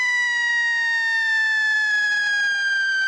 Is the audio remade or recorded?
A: recorded